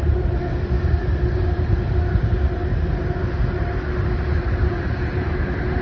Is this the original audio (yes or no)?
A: yes